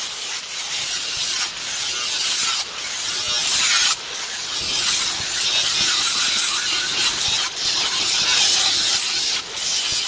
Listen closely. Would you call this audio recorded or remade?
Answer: recorded